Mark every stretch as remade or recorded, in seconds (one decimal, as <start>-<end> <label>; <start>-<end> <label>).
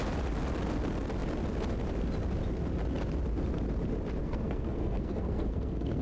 0.0-4.2 recorded; 4.2-6.0 remade